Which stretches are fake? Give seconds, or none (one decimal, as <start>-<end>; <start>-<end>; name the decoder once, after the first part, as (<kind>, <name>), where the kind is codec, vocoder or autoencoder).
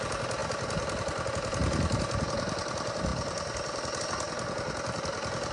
none